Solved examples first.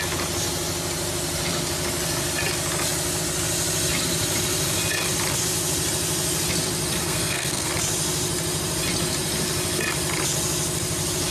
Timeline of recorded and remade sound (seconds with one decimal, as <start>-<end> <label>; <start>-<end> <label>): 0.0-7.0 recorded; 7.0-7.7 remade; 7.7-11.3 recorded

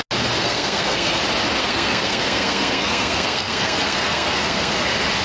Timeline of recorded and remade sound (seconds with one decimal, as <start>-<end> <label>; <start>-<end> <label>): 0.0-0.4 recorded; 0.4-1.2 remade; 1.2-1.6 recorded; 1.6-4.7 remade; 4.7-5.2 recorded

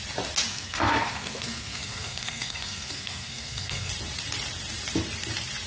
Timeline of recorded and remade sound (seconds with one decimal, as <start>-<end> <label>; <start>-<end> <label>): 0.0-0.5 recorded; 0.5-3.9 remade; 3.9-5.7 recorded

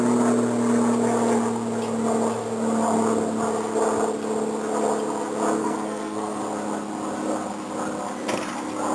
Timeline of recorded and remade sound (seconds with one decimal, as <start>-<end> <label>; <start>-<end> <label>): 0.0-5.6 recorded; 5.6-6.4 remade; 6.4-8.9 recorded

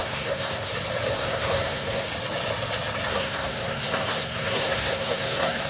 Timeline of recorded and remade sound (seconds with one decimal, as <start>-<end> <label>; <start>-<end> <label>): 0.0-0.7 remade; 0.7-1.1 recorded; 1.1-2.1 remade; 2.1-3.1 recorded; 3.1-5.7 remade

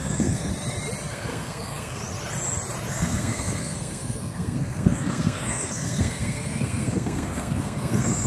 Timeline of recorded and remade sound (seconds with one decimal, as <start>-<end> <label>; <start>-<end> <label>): 0.0-0.5 remade; 0.5-1.1 recorded; 1.1-2.0 remade; 2.0-2.9 recorded; 2.9-8.3 remade

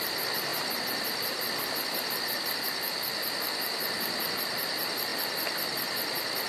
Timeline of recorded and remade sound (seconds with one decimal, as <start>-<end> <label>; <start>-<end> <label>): 0.0-6.5 recorded